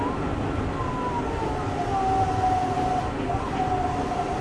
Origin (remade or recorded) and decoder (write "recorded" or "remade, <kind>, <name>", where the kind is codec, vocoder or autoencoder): recorded